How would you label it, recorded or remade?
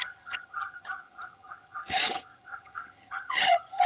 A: remade